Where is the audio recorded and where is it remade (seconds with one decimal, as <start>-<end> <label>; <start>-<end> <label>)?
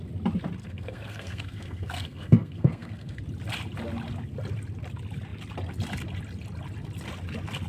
0.0-0.6 recorded; 0.6-3.2 remade; 3.2-7.7 recorded